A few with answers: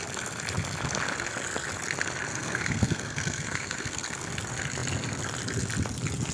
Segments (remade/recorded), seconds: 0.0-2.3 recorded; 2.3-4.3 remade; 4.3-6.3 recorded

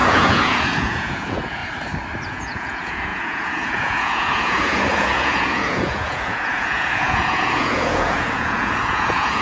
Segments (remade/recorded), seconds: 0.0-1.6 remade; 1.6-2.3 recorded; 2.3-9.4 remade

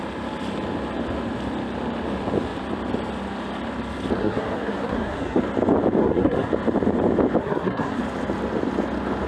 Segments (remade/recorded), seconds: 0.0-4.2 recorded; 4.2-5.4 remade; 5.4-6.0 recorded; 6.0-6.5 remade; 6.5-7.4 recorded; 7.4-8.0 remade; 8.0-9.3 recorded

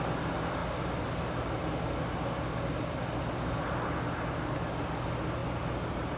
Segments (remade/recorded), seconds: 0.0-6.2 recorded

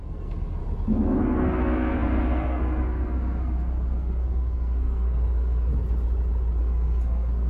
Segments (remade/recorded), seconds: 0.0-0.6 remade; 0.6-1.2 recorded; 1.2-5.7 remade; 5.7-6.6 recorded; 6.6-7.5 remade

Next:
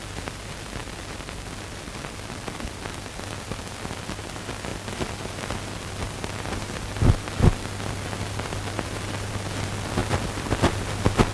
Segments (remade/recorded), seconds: 0.0-10.0 recorded; 10.0-10.6 remade; 10.6-11.3 recorded

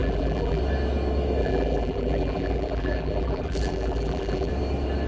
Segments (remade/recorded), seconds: 0.0-0.6 remade; 0.6-1.4 recorded; 1.4-4.5 remade; 4.5-5.1 recorded

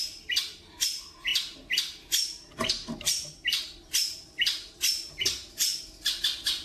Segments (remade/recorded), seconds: 0.0-6.6 recorded